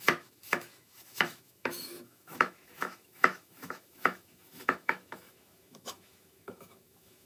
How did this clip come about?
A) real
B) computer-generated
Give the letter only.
B